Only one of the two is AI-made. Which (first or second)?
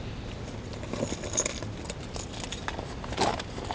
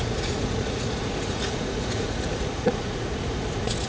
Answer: second